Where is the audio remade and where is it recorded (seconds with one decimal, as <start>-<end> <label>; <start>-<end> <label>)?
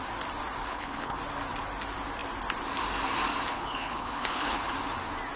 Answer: 0.0-0.6 recorded; 0.6-1.2 remade; 1.2-3.5 recorded; 3.5-4.7 remade; 4.7-5.4 recorded